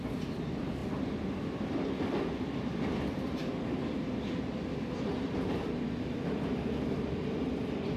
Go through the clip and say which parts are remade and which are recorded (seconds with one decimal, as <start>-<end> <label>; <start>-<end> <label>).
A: 0.0-8.0 recorded